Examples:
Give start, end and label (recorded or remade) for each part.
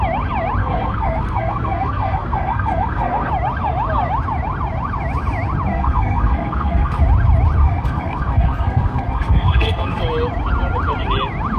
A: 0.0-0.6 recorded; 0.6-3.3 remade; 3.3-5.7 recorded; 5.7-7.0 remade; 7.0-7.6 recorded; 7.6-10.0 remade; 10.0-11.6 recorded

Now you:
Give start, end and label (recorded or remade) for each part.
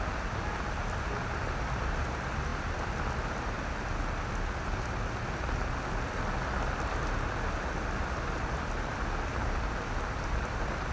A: 0.0-10.9 recorded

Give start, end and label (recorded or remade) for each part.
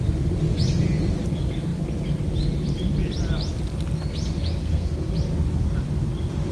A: 0.0-4.6 recorded; 4.6-5.1 remade; 5.1-6.5 recorded